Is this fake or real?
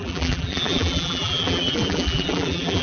fake